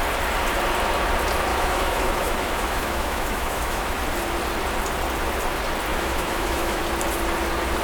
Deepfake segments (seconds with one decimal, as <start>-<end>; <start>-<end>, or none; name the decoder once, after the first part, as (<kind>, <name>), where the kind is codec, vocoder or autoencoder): 1.5-4.0 (autoencoder, DAC-VAE); 5.9-6.8